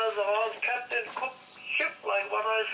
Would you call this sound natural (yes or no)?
yes